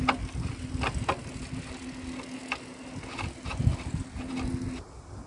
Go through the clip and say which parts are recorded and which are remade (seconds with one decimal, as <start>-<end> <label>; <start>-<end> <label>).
0.0-5.3 recorded